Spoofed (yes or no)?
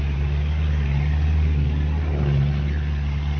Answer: no